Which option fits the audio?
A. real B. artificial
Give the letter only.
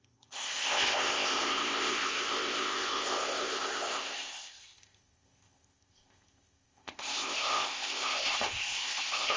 B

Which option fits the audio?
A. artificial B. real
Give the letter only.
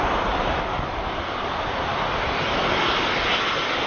B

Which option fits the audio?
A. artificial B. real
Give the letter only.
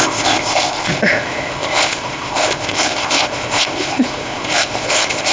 A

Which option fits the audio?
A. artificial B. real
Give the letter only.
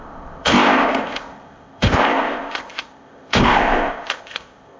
A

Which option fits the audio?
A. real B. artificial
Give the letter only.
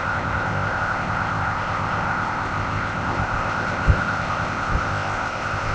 B